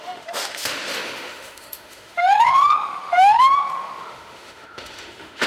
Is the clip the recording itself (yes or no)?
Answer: no